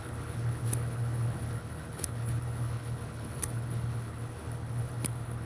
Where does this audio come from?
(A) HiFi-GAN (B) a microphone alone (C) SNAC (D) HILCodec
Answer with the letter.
D